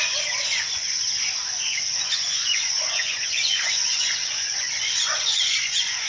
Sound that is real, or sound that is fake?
fake